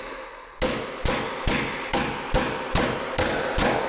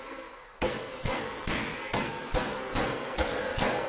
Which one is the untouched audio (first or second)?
first